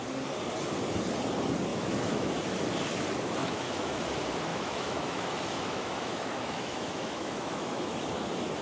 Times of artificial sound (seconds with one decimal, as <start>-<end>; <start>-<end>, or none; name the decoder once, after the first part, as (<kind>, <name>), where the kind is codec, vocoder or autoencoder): 1.7-2.4 (autoencoder, DAC-VAE); 3.4-4.0; 4.5-8.1